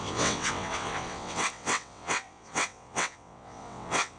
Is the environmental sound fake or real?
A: fake